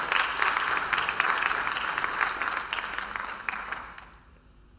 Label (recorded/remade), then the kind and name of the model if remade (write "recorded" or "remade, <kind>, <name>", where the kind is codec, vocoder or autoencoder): recorded